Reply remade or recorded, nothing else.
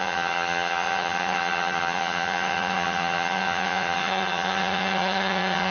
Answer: remade